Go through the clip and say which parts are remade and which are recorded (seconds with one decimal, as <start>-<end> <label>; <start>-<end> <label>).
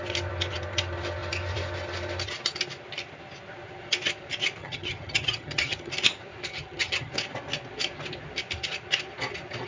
0.0-4.6 recorded; 4.6-5.9 remade; 5.9-6.5 recorded; 6.5-7.1 remade; 7.1-9.7 recorded